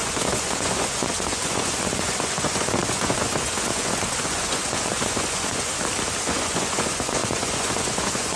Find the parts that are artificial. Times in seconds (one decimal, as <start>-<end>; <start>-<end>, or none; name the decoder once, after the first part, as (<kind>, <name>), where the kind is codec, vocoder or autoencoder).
0.0-5.7 (vocoder, Vocos); 6.2-8.4

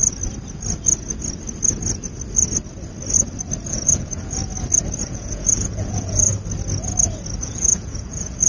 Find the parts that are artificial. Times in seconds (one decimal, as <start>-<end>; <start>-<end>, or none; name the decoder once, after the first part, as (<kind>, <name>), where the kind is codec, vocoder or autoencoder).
3.7-4.4 (vocoder, Vocos); 5.0-6.3; 7.4-8.5

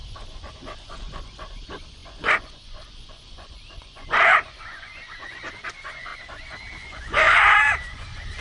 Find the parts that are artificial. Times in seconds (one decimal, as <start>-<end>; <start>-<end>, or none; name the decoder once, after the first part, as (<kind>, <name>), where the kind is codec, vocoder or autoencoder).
0.0-8.4 (vocoder, Vocos)

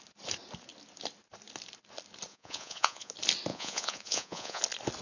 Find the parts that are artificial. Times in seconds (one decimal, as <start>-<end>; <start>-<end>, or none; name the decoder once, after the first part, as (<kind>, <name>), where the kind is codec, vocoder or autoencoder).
2.3-3.1 (vocoder, Vocos); 3.5-4.6

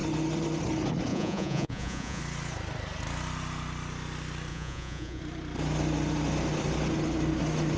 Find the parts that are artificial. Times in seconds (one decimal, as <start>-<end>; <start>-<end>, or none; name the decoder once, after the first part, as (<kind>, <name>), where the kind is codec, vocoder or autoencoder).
1.1-2.2 (vocoder, Vocos); 4.5-5.2